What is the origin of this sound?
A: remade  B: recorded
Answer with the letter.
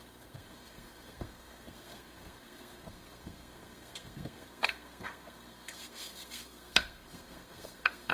A